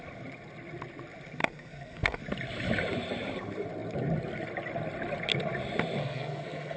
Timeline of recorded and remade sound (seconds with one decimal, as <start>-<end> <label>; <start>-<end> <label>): 0.0-1.4 recorded; 1.4-2.2 remade; 2.2-6.0 recorded; 6.0-6.8 remade